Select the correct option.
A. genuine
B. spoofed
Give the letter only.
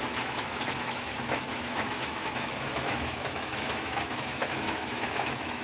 B